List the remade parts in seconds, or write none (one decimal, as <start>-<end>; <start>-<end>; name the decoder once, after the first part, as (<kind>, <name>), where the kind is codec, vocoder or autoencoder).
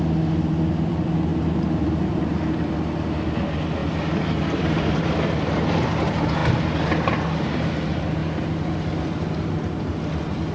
0.0-1.3 (vocoder, BigVGAN v2); 3.4-8.2; 9.8-10.5